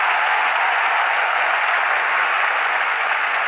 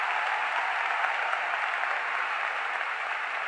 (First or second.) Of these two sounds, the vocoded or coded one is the first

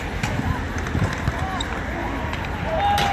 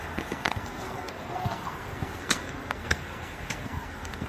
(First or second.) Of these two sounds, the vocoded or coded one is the second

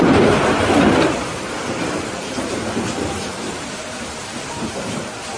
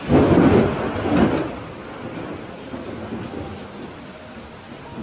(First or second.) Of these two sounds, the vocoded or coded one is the first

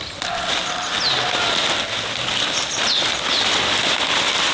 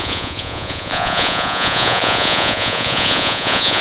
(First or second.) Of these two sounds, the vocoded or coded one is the second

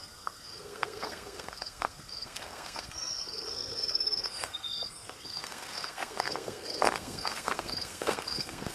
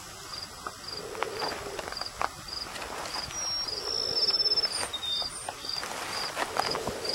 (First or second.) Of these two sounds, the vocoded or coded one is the first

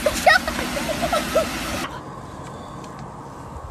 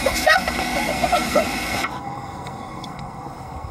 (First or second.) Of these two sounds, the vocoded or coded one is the second